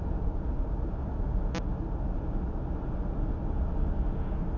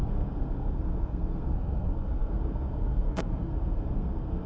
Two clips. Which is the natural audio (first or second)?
first